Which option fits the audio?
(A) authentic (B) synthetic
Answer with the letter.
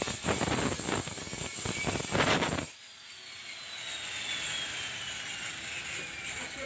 A